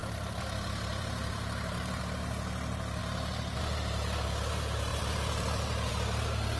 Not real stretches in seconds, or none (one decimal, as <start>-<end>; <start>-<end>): 0.0-2.0; 3.0-3.6; 4.9-5.9